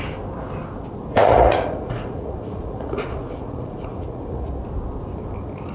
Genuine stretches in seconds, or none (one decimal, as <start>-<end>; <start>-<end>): 0.0-1.1; 4.5-5.7